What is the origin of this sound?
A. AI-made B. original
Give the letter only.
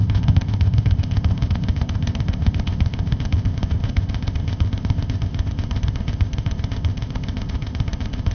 A